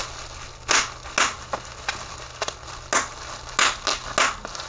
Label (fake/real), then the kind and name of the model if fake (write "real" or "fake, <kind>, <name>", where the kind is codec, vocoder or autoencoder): real